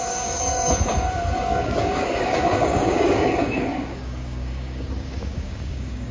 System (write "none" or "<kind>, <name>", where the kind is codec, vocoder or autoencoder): codec, DAC